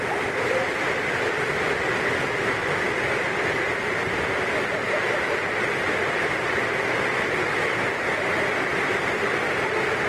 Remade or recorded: recorded